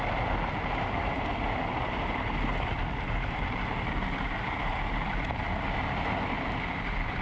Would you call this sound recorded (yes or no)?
yes